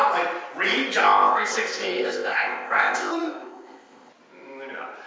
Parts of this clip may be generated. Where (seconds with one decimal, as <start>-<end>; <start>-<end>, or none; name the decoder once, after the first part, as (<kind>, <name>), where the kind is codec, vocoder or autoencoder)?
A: 1.0-4.1 (codec, ZipCodec)